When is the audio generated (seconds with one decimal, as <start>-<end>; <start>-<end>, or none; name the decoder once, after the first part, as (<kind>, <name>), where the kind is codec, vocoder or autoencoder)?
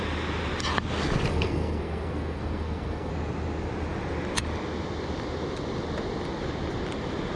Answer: 1.3-3.1 (codec, SNAC)